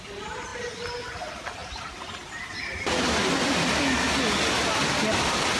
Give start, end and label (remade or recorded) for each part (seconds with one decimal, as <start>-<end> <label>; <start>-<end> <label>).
0.0-5.6 recorded